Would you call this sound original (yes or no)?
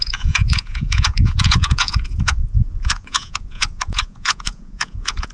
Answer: no